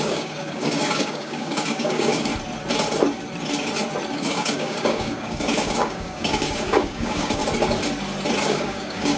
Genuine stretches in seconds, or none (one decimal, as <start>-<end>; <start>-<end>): 2.3-4.1; 7.4-8.5